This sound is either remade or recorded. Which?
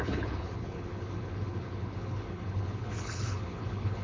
remade